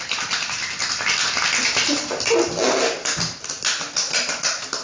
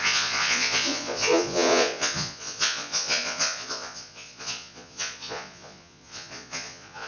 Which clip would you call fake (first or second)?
second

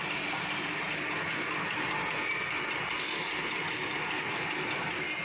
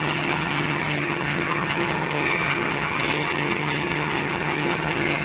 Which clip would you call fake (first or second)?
second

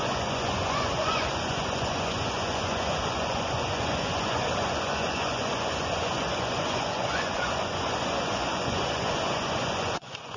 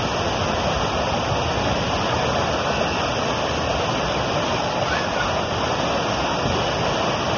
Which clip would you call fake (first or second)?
first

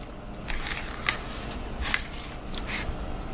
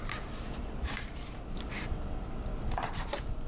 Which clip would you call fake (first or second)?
second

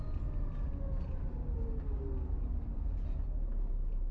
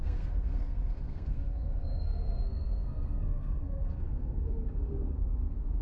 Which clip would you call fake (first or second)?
second